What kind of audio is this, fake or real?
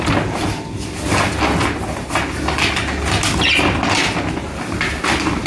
real